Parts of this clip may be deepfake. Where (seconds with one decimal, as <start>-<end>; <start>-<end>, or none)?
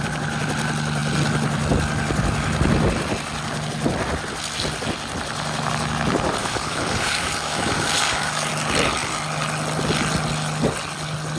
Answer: 6.4-8.5